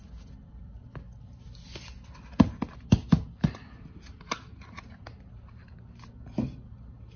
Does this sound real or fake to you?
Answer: real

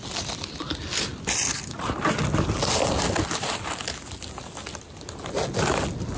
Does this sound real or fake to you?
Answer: real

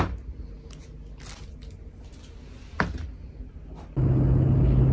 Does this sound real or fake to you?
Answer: real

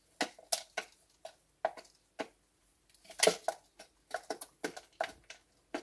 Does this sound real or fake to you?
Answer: real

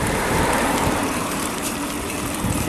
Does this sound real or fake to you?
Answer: fake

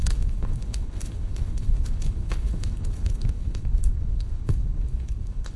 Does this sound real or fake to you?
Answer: fake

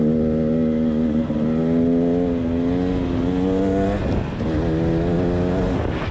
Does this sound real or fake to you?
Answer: real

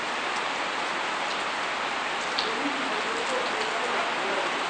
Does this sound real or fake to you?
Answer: real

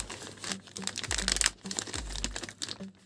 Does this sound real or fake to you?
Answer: real